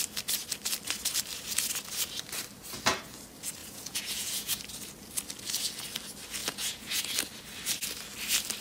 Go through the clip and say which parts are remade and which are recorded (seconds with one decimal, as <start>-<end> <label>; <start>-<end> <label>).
0.0-3.6 recorded; 3.6-4.6 remade; 4.6-6.4 recorded; 6.4-7.0 remade; 7.0-8.6 recorded